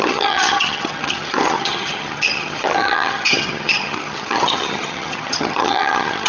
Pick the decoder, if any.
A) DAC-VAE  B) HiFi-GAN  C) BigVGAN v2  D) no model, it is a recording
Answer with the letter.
B